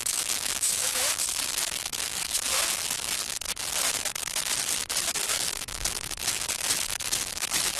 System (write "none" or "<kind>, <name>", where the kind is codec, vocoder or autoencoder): autoencoder, DAC-VAE